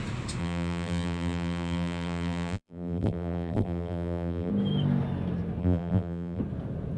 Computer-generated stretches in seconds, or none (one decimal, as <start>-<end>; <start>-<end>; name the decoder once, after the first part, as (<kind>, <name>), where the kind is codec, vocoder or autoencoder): 0.4-4.5 (vocoder, BigVGAN v2); 5.6-6.4